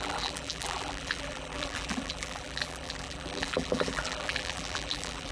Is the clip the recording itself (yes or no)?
no